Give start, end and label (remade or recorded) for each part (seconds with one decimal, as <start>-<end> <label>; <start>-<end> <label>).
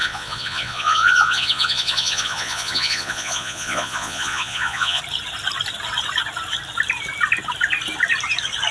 0.0-5.0 remade; 5.0-8.7 recorded